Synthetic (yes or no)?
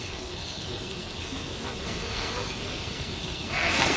yes